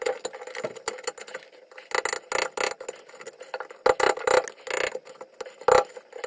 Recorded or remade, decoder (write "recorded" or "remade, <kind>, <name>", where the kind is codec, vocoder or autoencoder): recorded